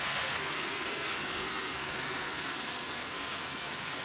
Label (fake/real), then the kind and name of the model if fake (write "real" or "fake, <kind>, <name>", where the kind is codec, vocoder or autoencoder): fake, codec, SNAC